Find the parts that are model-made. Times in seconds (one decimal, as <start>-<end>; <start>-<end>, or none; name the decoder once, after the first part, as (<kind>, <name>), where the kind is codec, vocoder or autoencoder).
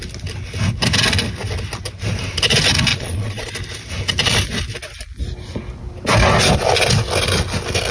2.9-3.5 (vocoder, Vocos)